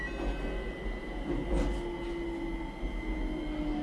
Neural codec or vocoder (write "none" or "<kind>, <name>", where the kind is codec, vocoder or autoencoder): none